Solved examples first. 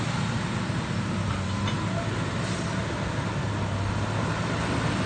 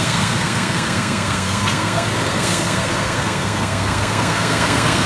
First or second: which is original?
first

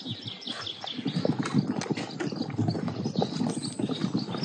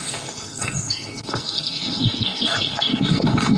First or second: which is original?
first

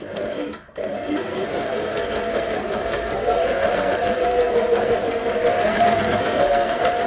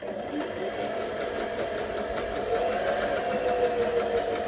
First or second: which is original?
second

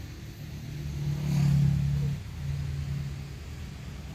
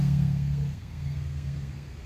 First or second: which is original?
first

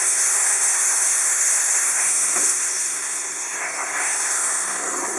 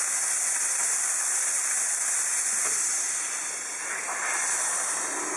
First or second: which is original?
second